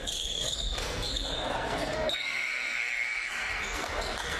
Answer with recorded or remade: remade